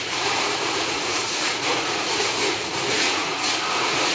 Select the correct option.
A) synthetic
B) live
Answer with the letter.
A